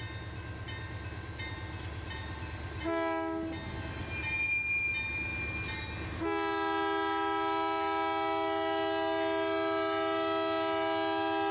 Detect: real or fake real